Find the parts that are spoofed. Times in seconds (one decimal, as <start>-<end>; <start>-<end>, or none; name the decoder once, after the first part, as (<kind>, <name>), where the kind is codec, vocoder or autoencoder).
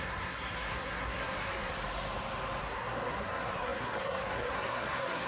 0.0-1.7 (codec, SNAC); 2.6-5.3